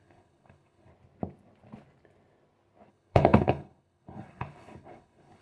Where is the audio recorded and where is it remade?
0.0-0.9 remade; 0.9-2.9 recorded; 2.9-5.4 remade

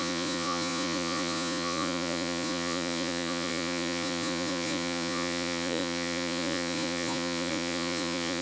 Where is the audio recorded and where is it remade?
0.0-8.4 remade